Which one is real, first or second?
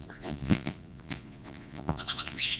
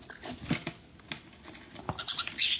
second